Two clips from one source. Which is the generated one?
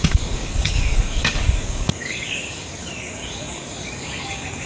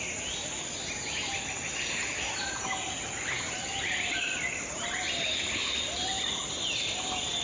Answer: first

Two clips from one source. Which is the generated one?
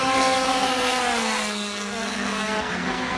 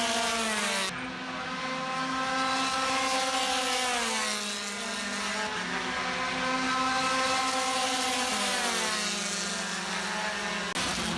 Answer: first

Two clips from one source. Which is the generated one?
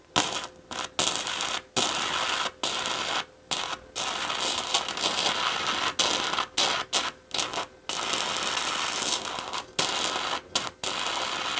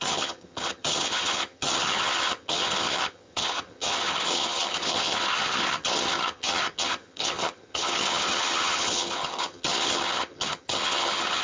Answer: second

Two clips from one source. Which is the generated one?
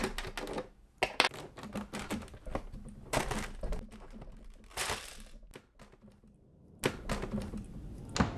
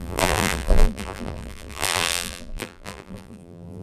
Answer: second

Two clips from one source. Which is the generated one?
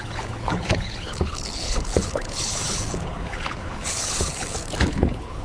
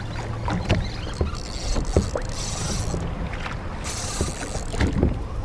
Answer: first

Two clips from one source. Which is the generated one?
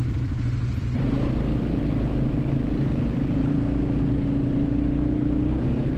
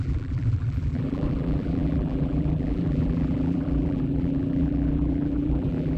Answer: second